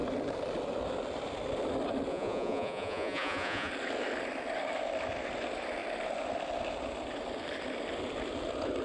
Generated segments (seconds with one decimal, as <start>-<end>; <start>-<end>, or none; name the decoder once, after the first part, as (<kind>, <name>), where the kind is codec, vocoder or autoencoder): 2.1-3.7 (vocoder, Vocos)